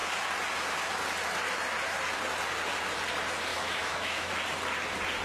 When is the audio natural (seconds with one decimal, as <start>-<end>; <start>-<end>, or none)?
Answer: 0.0-3.5; 4.3-5.2